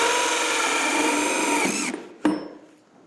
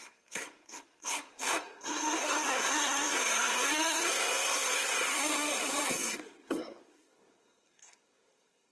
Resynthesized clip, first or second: second